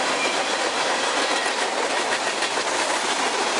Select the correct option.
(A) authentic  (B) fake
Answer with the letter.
A